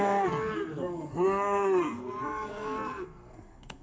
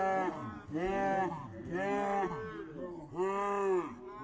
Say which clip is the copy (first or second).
first